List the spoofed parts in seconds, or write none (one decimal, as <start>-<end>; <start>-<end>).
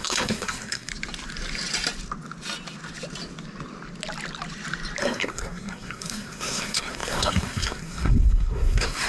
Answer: 0.0-0.9; 5.0-9.1